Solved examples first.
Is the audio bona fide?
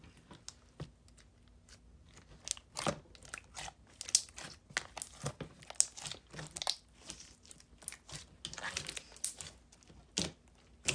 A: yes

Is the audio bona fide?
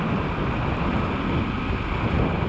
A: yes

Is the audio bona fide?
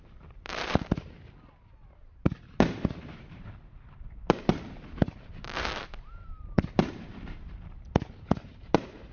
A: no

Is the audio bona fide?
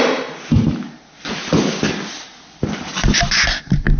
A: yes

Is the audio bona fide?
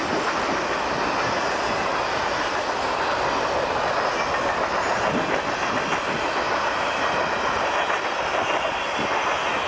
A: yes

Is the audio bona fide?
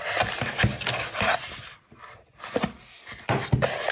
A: yes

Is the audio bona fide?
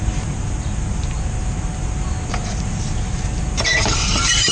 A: no